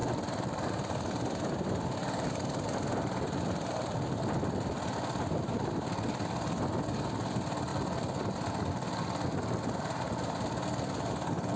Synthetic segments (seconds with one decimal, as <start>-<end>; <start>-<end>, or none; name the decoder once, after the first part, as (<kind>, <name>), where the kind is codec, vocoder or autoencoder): 0.0-3.4 (vocoder, BigVGAN v2)